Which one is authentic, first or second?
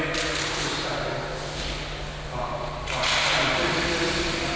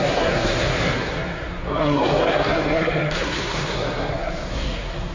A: first